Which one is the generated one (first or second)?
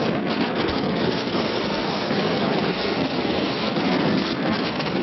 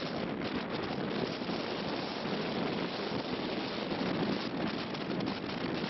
first